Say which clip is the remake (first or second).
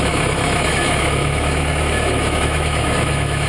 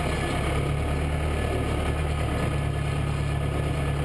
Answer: first